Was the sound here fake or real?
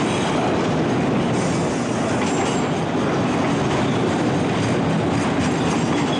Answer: real